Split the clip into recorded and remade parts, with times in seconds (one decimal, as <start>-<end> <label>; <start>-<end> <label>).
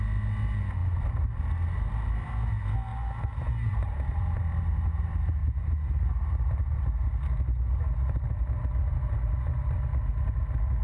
0.0-2.9 recorded; 2.9-4.4 remade; 4.4-5.4 recorded; 5.4-6.8 remade; 6.8-10.8 recorded